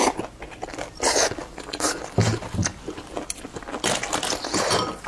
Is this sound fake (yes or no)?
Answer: no